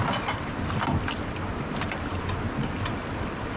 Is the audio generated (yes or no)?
no